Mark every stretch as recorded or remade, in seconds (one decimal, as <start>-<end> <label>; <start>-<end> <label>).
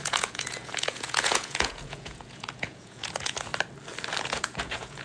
0.0-3.5 remade; 3.5-4.2 recorded; 4.2-5.0 remade